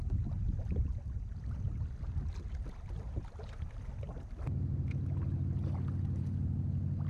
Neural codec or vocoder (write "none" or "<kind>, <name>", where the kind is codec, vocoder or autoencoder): none